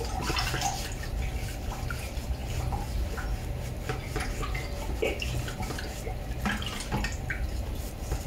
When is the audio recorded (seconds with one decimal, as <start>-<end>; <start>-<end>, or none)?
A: 0.0-8.3